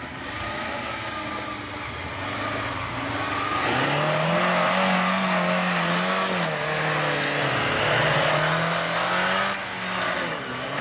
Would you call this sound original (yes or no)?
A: yes